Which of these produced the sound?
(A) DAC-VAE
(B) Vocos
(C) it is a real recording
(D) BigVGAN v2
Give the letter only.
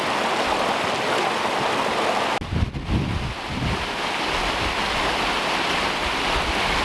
C